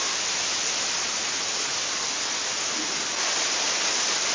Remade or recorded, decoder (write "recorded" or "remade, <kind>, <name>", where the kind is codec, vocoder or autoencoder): recorded